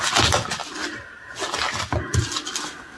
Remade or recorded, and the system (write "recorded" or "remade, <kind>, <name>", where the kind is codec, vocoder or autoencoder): recorded